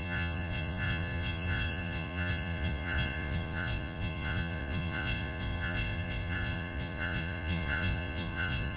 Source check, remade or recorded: remade